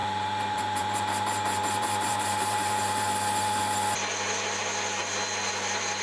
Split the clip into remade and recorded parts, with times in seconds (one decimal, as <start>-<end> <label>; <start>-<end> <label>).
0.0-3.6 remade; 3.6-6.0 recorded